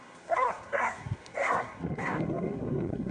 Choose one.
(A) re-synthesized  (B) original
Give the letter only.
A